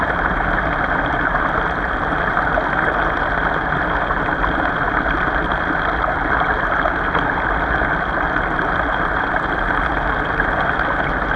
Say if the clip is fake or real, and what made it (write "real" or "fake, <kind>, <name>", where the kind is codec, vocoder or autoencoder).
real